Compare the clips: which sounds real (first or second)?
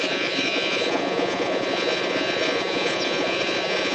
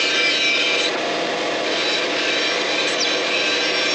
second